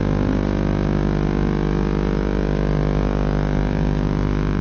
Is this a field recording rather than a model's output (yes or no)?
yes